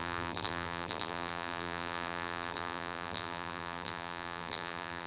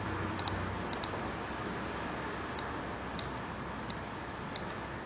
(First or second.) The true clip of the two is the second